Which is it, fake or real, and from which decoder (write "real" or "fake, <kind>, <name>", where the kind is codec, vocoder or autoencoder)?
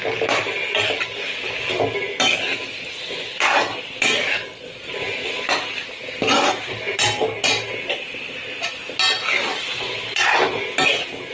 real